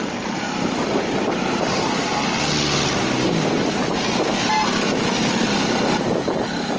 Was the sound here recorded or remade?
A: recorded